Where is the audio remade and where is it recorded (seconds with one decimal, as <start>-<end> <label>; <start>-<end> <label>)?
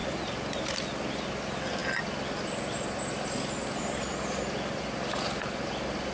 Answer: 0.0-6.1 recorded